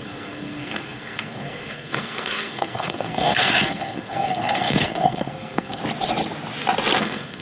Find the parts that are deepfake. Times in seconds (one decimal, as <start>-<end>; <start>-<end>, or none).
0.0-5.8; 7.0-7.4

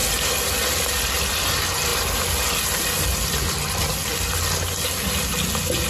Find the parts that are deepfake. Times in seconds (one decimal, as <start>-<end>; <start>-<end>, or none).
none

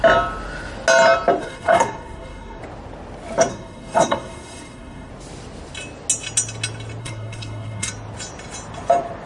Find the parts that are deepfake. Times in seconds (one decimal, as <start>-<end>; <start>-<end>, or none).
1.4-2.6; 3.5-5.1; 7.0-7.9

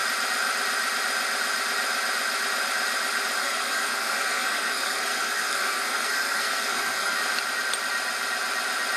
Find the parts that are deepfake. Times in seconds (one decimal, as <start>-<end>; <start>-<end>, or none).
3.4-7.2

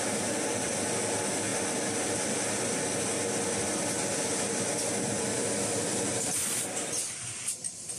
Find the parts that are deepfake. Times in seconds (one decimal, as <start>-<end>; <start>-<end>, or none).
none